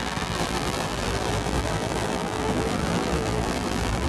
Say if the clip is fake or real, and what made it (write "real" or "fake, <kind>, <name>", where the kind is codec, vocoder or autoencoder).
fake, vocoder, BigVGAN v2